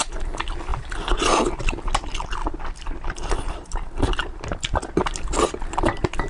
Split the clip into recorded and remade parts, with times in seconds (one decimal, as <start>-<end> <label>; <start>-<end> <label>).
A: 0.0-6.3 recorded